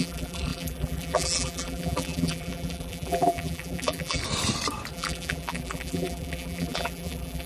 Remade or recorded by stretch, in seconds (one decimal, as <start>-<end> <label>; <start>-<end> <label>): 0.0-4.2 remade; 4.2-4.9 recorded; 4.9-7.5 remade